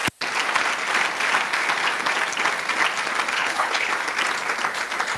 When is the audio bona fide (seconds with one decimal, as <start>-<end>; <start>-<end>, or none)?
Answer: 0.0-3.3; 3.9-5.2